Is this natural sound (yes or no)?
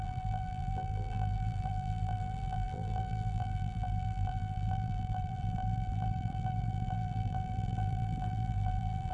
no